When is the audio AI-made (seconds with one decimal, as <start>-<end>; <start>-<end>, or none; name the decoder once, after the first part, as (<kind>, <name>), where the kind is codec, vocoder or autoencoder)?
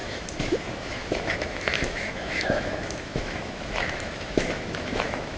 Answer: 0.0-5.4 (autoencoder, DAC-VAE)